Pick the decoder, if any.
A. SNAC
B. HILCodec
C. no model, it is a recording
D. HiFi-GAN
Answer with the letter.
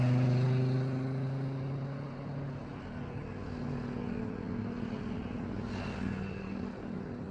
C